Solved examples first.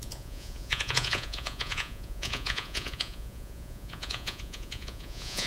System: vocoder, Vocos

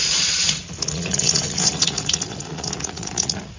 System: vocoder, Vocos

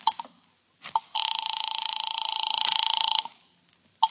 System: none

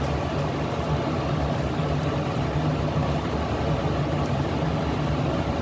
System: none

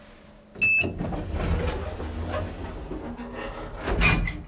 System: none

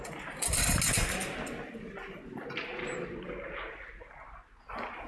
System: none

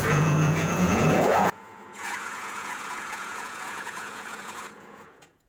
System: vocoder, Vocos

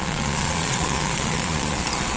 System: vocoder, Vocos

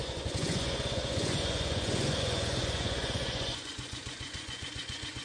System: vocoder, Vocos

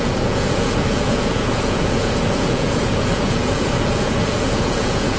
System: vocoder, Vocos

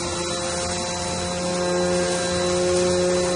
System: none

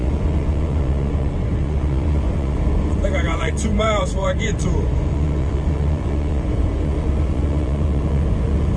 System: vocoder, Vocos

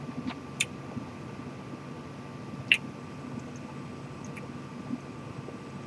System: none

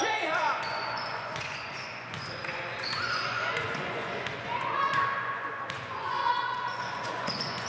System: vocoder, Vocos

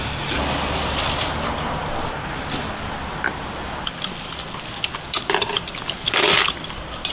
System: none